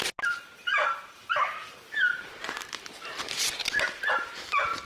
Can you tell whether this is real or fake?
real